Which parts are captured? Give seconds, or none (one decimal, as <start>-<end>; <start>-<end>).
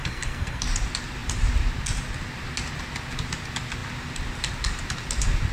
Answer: 0.6-5.5